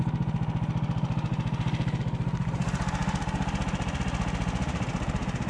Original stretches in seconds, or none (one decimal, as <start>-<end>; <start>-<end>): 0.0-5.5